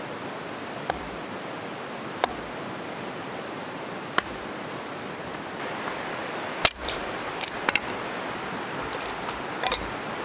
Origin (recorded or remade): recorded